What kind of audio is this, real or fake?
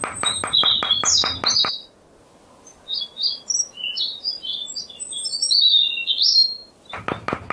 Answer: real